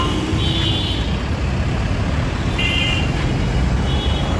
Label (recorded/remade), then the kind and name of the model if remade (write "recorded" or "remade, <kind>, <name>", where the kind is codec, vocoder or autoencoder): recorded